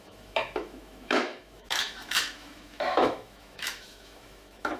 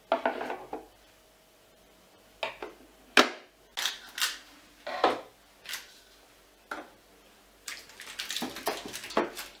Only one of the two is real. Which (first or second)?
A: second